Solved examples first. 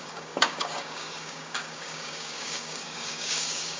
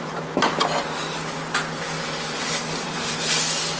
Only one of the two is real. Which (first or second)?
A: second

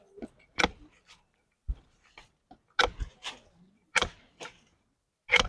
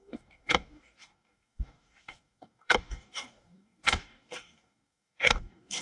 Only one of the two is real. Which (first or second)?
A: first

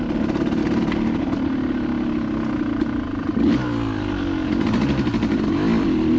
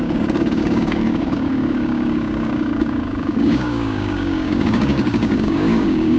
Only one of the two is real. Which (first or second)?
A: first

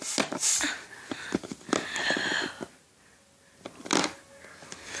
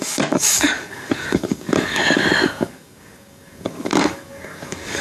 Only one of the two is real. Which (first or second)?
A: first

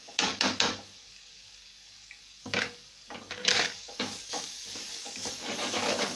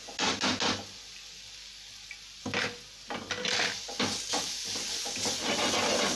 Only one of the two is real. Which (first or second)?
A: second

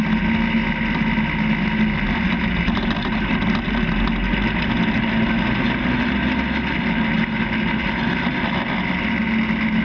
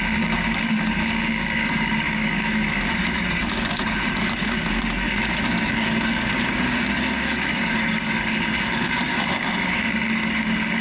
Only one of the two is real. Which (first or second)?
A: first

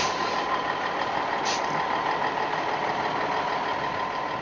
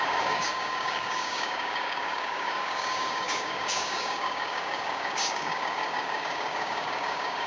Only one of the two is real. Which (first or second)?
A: first